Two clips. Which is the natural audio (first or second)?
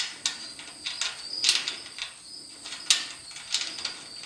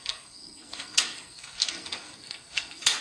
first